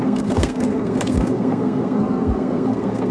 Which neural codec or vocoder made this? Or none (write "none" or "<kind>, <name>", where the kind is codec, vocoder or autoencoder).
codec, SNAC